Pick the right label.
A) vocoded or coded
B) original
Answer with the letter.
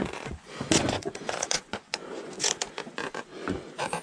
A